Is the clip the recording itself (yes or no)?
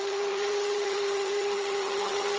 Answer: no